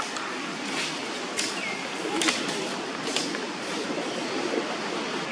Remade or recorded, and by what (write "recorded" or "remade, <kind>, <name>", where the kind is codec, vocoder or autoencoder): recorded